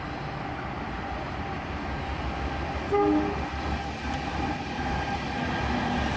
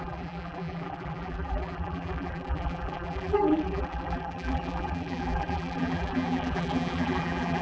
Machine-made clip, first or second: second